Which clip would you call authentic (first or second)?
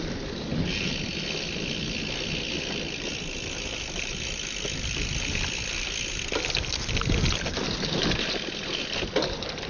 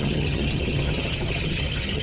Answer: first